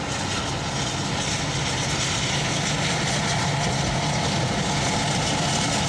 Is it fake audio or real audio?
real